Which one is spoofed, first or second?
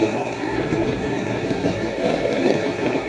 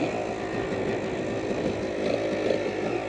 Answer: first